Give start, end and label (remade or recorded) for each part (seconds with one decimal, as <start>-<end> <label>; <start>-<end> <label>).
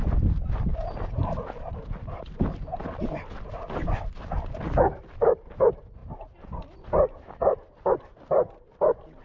0.0-0.7 recorded; 0.7-1.4 remade; 1.4-8.1 recorded; 8.1-9.2 remade